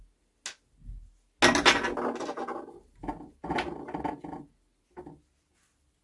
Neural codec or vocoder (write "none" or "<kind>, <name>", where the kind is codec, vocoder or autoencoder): none